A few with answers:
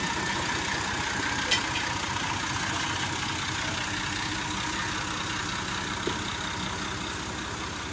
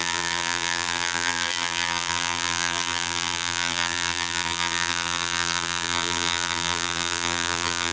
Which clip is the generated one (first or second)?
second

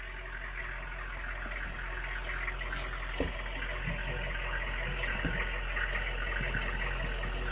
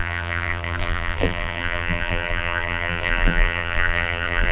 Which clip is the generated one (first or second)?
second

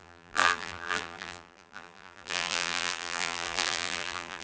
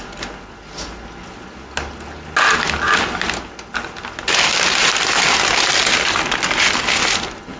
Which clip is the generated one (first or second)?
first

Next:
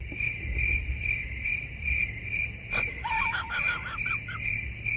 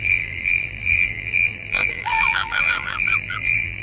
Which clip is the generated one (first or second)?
second